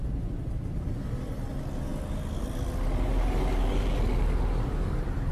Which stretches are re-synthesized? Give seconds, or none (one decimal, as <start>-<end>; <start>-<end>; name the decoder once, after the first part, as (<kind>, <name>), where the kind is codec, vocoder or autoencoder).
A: none